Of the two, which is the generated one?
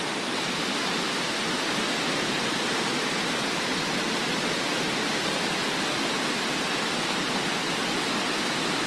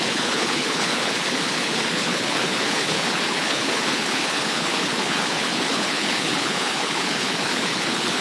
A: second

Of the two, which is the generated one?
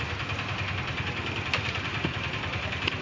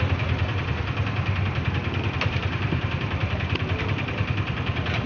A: second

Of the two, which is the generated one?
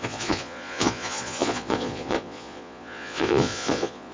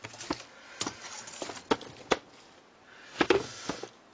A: first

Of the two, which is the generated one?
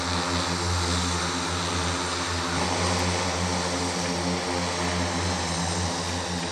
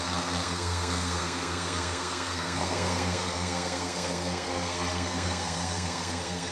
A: second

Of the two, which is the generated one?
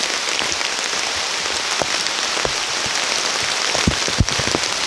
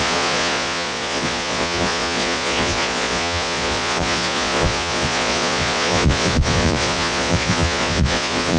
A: second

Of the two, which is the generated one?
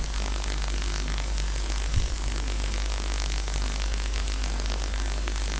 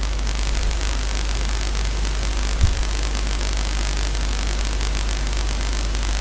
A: first